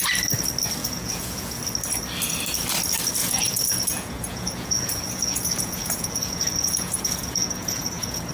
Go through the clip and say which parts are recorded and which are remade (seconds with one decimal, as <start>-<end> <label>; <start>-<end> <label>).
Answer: 0.0-0.8 recorded; 0.8-1.6 remade; 1.6-3.2 recorded; 3.2-8.3 remade